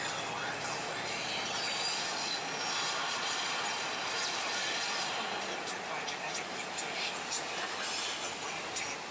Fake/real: real